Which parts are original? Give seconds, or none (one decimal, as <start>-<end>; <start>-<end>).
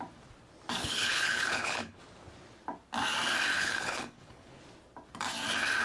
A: 0.0-0.8; 2.0-3.5; 4.6-5.8